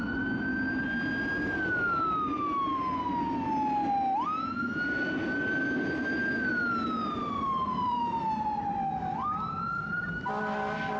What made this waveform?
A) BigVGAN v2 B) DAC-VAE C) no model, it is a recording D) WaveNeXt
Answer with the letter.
C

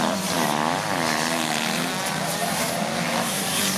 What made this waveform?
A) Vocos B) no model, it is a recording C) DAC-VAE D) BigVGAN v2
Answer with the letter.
B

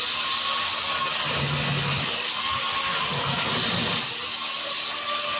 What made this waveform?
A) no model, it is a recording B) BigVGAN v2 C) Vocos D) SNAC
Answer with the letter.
A